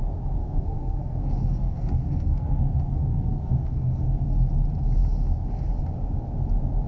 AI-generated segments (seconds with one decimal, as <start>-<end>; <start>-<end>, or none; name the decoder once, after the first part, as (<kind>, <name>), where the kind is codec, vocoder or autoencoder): 0.4-4.5 (codec, SNAC)